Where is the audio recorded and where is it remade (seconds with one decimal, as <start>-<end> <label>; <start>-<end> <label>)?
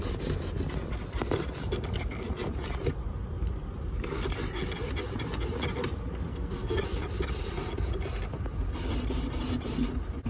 0.0-6.3 recorded; 6.3-6.8 remade; 6.8-10.3 recorded